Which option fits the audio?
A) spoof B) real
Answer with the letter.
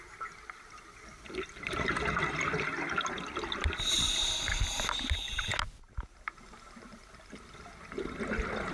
B